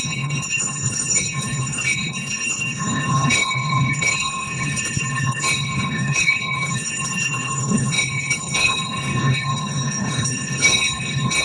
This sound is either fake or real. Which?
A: fake